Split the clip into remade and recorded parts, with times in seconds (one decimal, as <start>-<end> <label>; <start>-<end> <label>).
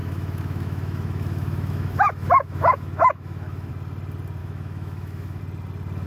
0.0-3.7 remade; 3.7-4.4 recorded; 4.4-5.4 remade; 5.4-6.1 recorded